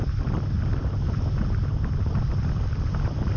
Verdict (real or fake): real